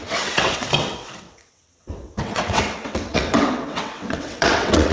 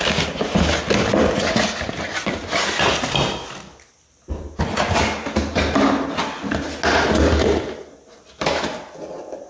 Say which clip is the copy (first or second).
first